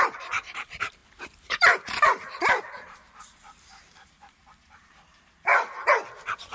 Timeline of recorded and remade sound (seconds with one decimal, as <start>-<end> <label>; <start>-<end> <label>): 0.0-1.0 remade; 1.0-2.6 recorded; 2.6-5.5 remade; 5.5-6.5 recorded